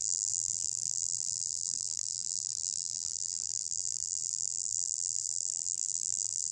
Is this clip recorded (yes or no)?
no